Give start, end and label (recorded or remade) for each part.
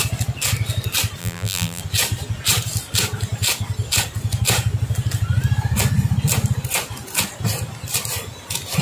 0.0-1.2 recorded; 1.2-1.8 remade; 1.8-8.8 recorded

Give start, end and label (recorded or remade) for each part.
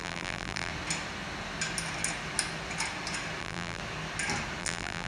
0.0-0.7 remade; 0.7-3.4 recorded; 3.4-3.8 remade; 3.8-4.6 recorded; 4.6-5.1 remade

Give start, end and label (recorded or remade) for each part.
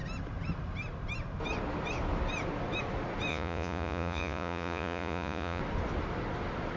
0.0-3.3 recorded; 3.3-5.6 remade; 5.6-6.8 recorded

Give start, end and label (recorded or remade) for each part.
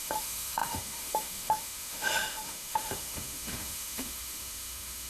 0.0-5.1 remade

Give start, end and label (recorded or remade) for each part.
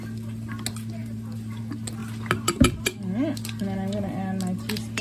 0.0-1.0 recorded; 1.0-1.6 remade; 1.6-5.0 recorded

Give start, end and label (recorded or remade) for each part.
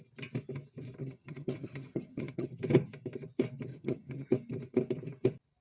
0.0-1.0 recorded; 1.0-2.5 remade; 2.5-3.7 recorded; 3.7-4.3 remade; 4.3-5.6 recorded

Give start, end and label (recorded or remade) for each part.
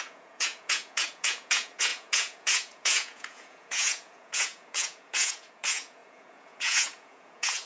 0.0-7.7 remade